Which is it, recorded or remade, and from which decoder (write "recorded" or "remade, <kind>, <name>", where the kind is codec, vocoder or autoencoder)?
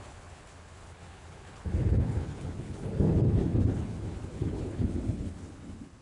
remade, codec, HILCodec